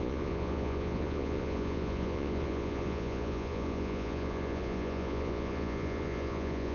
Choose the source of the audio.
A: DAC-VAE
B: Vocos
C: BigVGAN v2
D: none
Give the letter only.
B